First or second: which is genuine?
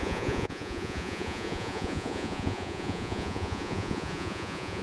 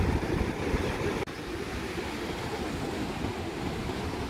second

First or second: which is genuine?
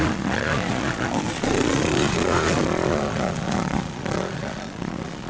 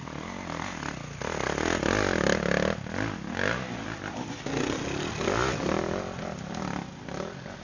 second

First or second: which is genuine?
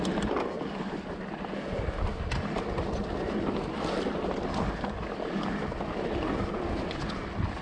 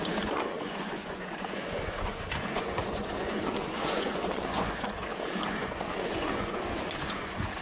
first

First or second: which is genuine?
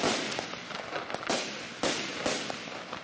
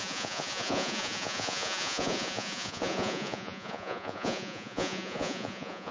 first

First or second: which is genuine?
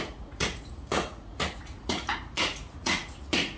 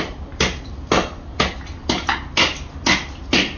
second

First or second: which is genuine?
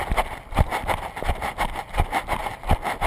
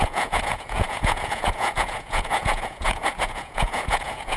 first